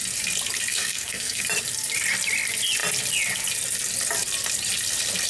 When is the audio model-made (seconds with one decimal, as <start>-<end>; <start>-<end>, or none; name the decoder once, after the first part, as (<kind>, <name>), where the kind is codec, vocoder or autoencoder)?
0.7-1.4 (codec, SNAC)

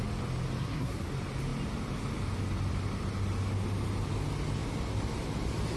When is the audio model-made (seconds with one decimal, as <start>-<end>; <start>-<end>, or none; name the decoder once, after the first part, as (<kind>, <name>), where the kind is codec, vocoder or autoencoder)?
0.6-1.1 (codec, SNAC)

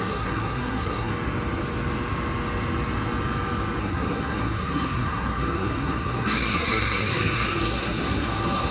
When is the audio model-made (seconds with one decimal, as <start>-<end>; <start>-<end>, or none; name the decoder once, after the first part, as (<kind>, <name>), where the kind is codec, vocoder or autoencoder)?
0.0-1.1 (codec, SNAC); 3.8-8.7